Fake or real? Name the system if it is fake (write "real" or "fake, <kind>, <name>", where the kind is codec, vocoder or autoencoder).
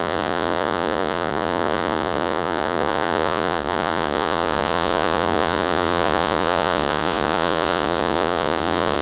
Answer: fake, vocoder, Vocos